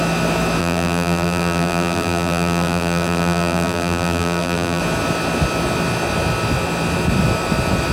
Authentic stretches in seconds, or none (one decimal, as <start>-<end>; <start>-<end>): 0.0-0.6; 4.8-7.9